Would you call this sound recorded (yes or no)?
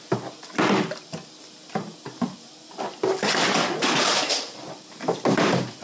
no